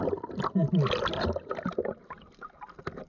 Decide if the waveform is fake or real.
real